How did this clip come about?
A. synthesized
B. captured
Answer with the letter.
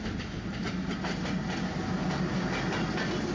B